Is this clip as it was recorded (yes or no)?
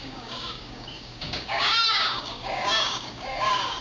no